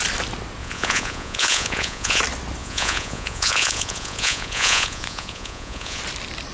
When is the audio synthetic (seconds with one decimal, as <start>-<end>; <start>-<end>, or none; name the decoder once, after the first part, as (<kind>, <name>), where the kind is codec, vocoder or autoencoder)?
0.6-2.2 (vocoder, Vocos); 2.6-6.0